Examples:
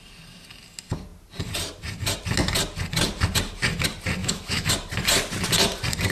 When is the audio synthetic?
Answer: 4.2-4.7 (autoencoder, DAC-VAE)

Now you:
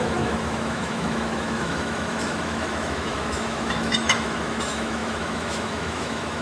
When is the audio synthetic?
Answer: 0.0-6.4 (autoencoder, DAC-VAE)

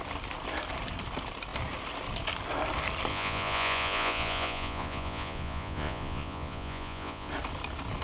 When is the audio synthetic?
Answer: 3.1-7.3 (vocoder, Vocos)

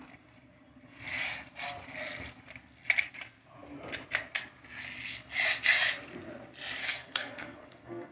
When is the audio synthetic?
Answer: 6.8-8.1 (codec, SNAC)

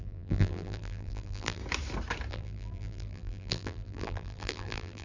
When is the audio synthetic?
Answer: 0.0-1.6 (vocoder, BigVGAN v2); 2.3-5.0

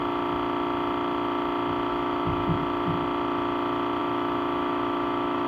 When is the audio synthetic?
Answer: 1.9-2.6 (autoencoder, DAC-VAE); 4.0-5.5

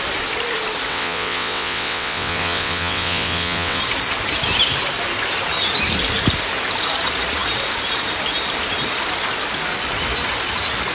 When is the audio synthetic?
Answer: 0.9-3.8 (vocoder, WaveNeXt)